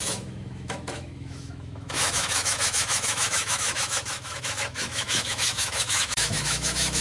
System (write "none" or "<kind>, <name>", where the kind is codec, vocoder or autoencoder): autoencoder, DAC-VAE